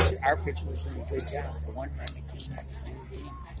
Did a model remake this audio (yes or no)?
no